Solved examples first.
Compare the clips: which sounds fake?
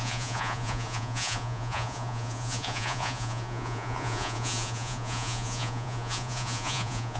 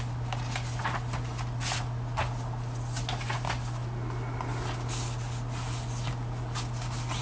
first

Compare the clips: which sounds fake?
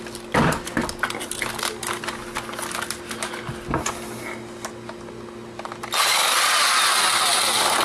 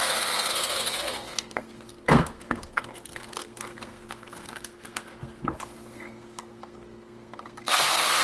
second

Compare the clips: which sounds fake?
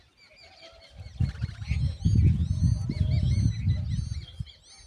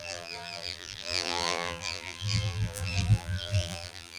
second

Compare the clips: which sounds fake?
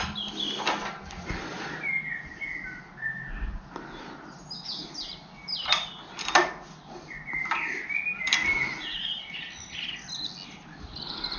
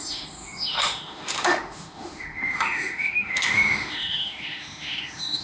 second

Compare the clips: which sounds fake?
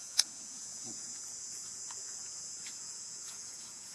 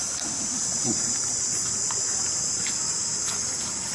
first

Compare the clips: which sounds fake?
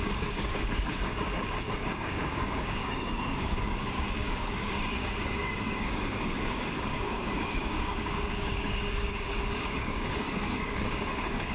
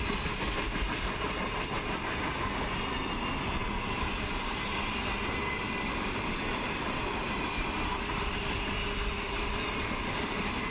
first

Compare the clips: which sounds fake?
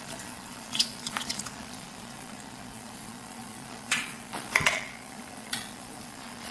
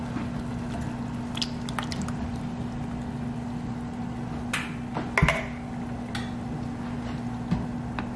first